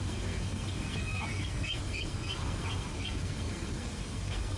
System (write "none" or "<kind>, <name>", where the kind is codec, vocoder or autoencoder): codec, SNAC